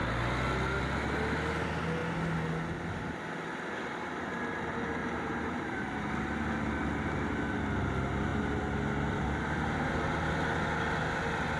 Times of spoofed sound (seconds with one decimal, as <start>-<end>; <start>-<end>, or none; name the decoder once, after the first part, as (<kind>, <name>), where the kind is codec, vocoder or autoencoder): 5.0-6.1 (vocoder, BigVGAN v2)